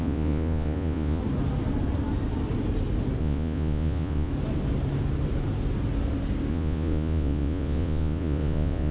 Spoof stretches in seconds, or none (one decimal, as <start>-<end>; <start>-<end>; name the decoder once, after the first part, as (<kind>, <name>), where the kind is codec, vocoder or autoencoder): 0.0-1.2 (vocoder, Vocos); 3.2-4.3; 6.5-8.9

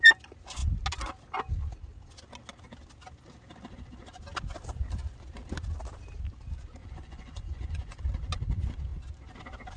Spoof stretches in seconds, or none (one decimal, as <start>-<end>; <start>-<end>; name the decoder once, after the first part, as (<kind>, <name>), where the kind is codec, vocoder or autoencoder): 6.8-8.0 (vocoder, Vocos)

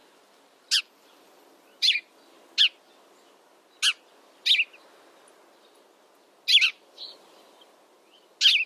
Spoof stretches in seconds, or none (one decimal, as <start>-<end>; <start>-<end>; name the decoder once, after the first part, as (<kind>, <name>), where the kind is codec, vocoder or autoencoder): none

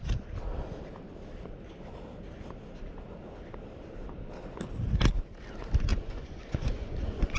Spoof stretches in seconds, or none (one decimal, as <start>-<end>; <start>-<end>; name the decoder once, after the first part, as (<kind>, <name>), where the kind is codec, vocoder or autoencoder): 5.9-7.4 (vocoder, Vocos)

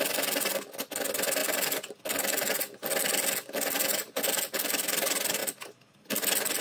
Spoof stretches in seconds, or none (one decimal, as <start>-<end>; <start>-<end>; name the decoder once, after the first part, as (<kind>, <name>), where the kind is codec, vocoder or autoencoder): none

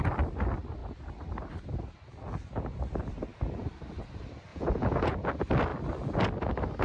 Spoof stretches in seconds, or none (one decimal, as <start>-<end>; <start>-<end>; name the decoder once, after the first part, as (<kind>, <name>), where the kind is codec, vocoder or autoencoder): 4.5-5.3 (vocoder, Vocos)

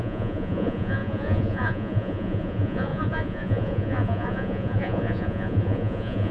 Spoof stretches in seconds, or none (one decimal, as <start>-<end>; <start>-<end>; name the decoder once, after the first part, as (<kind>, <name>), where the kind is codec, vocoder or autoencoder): 0.0-6.3 (vocoder, Vocos)